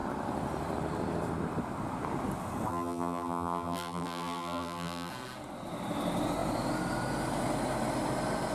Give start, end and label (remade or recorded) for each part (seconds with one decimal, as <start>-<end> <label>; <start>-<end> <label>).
0.0-2.7 recorded; 2.7-5.1 remade; 5.1-8.5 recorded